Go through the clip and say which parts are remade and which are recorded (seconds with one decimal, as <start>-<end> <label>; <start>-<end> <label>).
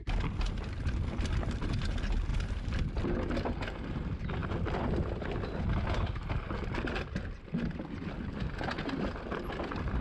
0.0-2.3 recorded; 2.3-2.8 remade; 2.8-10.0 recorded